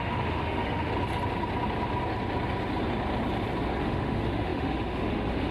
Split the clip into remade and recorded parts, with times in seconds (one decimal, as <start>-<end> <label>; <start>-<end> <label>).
0.0-0.9 remade; 0.9-3.8 recorded; 3.8-5.5 remade